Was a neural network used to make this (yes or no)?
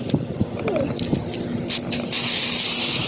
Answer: no